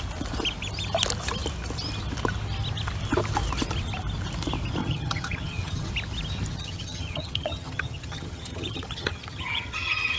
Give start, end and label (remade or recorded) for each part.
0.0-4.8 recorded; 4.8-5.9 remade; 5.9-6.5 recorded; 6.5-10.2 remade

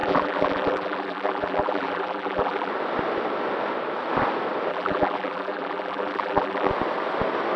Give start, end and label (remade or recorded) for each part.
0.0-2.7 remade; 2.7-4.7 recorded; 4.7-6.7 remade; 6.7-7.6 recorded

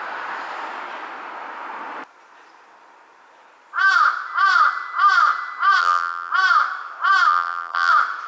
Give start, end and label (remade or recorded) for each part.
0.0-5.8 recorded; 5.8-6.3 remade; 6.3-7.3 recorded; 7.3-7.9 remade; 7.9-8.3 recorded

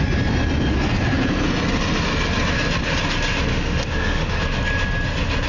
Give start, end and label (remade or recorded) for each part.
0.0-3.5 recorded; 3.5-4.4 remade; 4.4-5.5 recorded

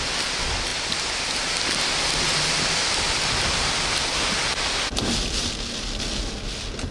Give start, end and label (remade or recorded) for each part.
0.0-6.9 recorded